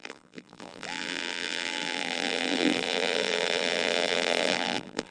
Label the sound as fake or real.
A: fake